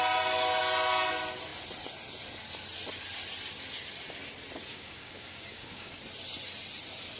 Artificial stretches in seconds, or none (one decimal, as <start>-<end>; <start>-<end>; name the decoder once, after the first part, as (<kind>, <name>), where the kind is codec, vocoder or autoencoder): 4.7-6.0 (codec, DAC)

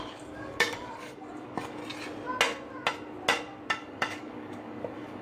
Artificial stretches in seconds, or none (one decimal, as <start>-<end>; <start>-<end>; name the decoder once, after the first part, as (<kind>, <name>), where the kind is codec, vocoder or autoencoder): 0.0-1.8 (codec, DAC); 3.7-5.2

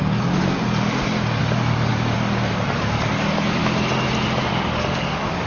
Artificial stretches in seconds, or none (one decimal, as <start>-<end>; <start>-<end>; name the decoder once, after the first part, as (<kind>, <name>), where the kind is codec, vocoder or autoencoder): 0.0-0.4 (codec, DAC); 1.4-3.6; 4.5-5.5

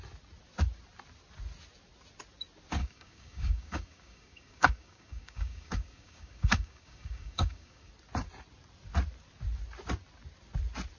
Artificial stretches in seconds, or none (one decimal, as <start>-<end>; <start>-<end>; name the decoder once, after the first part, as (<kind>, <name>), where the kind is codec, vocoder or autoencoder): 2.8-7.9 (codec, DAC)